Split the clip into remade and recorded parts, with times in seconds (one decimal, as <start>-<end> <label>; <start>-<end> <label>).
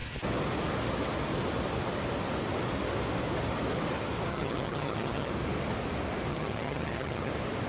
0.0-4.3 recorded; 4.3-5.3 remade; 5.3-6.3 recorded; 6.3-7.3 remade; 7.3-7.7 recorded